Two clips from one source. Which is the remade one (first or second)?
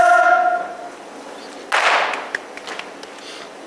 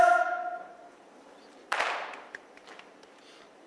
second